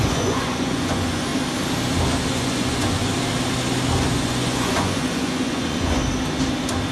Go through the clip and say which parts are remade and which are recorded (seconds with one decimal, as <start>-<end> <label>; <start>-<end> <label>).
0.0-1.3 remade; 1.3-2.3 recorded; 2.3-3.0 remade; 3.0-4.1 recorded; 4.1-6.0 remade; 6.0-6.9 recorded